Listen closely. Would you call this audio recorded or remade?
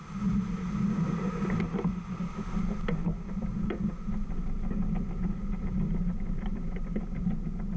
recorded